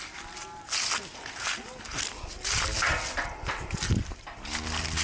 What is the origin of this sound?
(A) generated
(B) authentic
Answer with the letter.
B